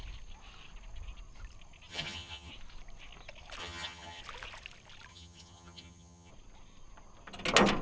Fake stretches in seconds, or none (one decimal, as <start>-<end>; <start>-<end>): 1.9-2.5; 3.6-4.2; 5.1-6.3